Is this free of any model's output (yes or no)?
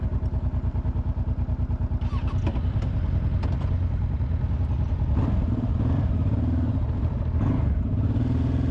yes